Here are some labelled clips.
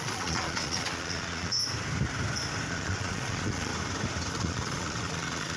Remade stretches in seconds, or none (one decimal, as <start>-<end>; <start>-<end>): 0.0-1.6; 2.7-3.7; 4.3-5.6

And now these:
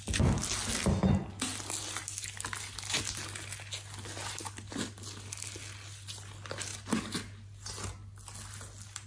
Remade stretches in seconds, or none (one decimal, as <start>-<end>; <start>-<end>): none

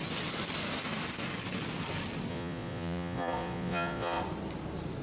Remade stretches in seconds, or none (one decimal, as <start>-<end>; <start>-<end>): 2.3-4.2